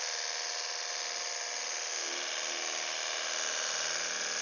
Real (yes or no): yes